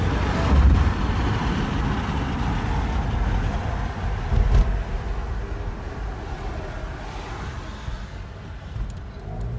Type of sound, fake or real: real